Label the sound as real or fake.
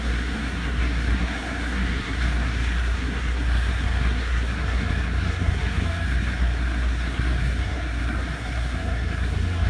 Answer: fake